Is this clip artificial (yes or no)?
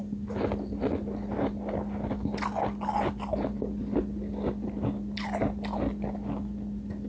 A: no